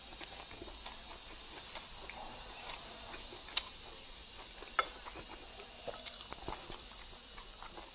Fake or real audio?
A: real